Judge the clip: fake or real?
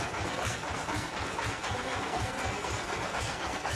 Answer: fake